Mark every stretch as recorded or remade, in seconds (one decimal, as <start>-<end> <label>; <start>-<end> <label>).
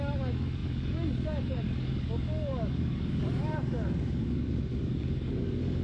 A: 0.0-5.8 remade